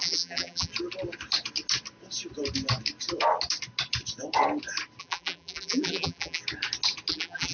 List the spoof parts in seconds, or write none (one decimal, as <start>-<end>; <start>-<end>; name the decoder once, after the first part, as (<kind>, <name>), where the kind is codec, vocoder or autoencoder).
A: 0.0-0.7 (vocoder, BigVGAN v2); 5.0-6.4; 7.1-7.5